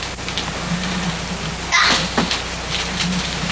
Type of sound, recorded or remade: recorded